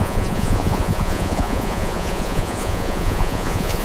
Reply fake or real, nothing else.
fake